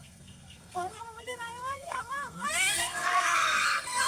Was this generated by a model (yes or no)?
yes